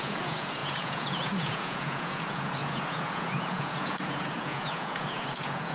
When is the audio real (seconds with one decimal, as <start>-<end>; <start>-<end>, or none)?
none

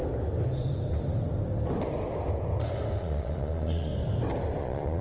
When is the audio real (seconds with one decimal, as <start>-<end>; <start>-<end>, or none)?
0.0-3.0; 3.9-4.6

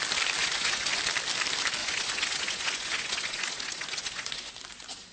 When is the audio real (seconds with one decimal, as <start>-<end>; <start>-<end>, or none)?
0.0-0.4; 1.0-1.8; 4.5-5.1

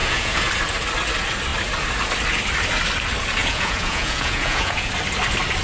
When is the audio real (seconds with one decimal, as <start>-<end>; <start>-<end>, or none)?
0.5-3.4; 4.9-5.6